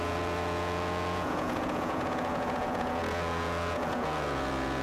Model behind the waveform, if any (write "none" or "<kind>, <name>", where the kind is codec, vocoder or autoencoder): vocoder, Vocos